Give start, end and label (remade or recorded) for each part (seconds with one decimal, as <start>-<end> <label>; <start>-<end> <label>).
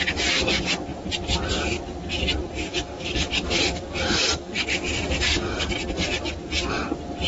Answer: 0.0-2.7 recorded; 2.7-5.7 remade; 5.7-7.3 recorded